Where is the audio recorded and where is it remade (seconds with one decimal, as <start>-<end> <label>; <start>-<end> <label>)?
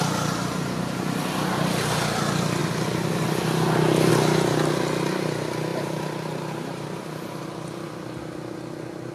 0.0-5.7 recorded; 5.7-7.5 remade; 7.5-9.1 recorded